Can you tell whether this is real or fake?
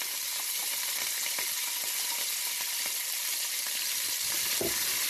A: real